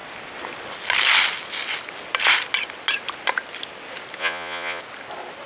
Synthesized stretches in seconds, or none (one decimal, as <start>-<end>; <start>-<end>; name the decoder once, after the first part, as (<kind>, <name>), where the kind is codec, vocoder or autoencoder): 4.2-4.8 (vocoder, Vocos)